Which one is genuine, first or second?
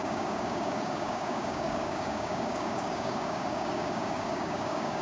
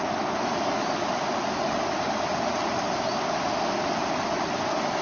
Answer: second